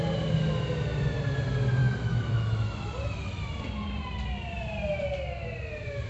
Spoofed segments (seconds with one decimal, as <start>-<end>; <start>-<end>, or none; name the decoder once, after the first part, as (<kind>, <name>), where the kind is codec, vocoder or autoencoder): 1.8-3.4 (autoencoder, DAC-VAE)